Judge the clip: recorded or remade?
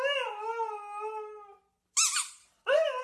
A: recorded